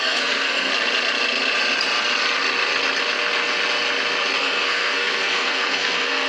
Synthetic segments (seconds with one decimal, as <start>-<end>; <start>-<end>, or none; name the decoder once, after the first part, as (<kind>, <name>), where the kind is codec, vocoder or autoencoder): 0.0-0.7 (codec, SNAC); 4.4-6.3